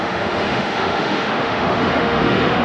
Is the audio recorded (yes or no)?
no